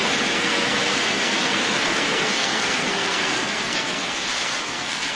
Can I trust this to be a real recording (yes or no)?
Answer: no